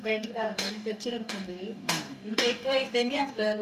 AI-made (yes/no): yes